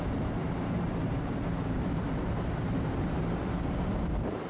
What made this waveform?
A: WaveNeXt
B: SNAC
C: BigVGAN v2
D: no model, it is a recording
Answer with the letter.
C